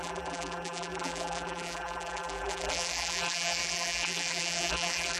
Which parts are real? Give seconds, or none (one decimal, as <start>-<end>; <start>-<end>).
none